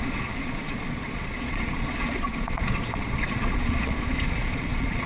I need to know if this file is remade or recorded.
remade